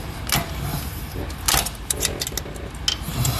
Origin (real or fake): real